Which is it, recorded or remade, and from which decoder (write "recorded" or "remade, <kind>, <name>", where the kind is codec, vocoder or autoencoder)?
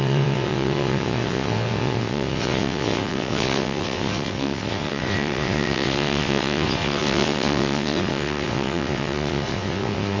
remade, vocoder, WaveNeXt